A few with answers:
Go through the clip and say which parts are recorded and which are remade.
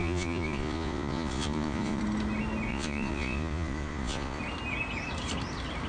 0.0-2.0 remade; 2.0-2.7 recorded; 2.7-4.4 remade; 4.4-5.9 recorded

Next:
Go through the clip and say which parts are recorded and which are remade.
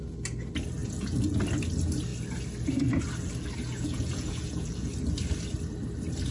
0.0-0.8 recorded; 0.8-1.4 remade; 1.4-3.7 recorded; 3.7-4.9 remade; 4.9-6.3 recorded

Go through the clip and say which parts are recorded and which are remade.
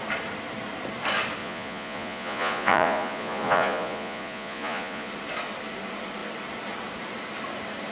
0.0-1.4 recorded; 1.4-5.1 remade; 5.1-7.9 recorded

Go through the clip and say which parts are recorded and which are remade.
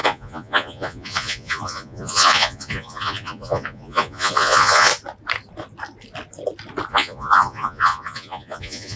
0.0-4.9 remade; 4.9-6.9 recorded; 6.9-9.0 remade